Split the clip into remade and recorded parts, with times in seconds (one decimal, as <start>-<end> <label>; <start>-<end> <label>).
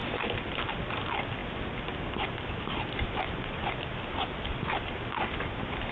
0.0-5.9 recorded